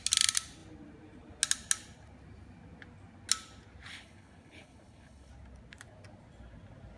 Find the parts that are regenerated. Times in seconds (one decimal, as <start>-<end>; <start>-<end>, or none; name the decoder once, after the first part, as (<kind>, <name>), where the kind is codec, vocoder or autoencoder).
3.9-5.3 (codec, HILCodec)